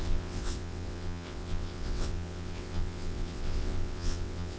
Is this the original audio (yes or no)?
no